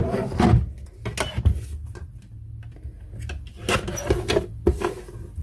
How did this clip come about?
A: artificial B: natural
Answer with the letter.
B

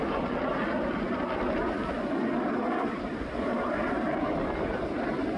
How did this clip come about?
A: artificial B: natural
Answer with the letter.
B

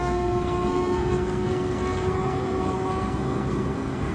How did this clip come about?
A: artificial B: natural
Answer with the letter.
A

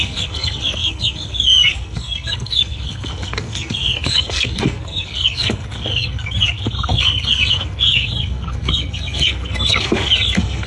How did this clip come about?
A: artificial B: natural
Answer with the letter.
A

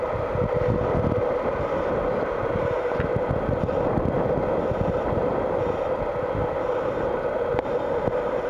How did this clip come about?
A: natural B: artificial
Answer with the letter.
A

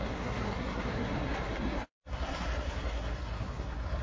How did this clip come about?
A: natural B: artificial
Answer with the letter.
B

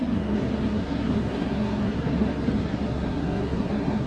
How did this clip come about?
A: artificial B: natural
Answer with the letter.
A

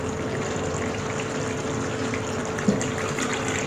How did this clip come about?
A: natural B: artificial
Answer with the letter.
A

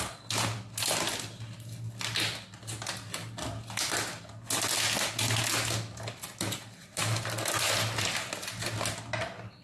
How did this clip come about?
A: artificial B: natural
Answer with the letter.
B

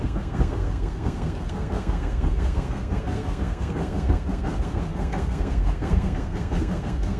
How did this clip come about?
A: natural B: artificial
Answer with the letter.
B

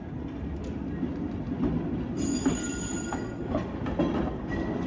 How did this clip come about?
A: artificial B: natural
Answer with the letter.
B